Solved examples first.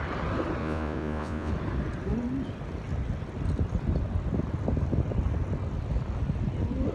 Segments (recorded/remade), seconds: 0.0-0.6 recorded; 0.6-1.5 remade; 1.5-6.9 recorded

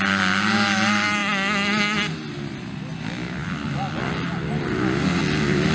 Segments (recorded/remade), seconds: 0.0-5.7 recorded

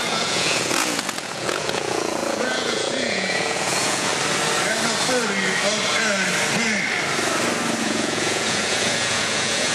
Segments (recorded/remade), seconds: 0.0-4.1 remade; 4.1-7.8 recorded; 7.8-9.7 remade